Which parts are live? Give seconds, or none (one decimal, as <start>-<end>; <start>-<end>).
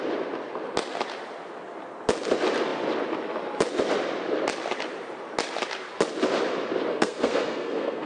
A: 0.0-6.9